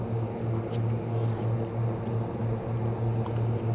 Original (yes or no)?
yes